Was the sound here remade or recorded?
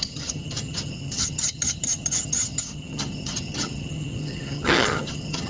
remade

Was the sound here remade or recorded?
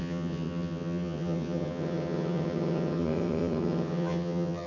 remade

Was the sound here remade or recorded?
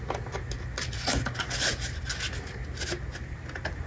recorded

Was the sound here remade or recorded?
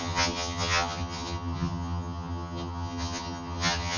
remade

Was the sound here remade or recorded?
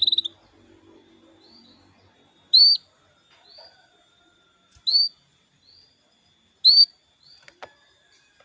recorded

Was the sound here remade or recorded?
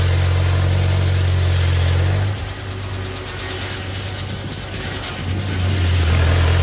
recorded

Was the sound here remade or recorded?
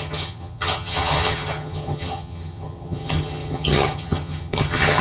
remade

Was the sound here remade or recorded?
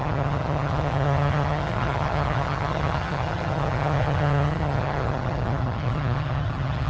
remade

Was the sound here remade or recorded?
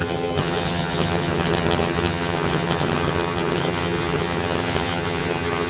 remade